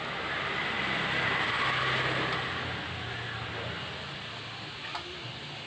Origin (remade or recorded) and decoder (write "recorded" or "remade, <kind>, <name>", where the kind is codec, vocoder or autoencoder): recorded